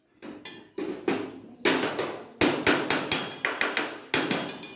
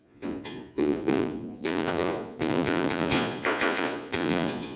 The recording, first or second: first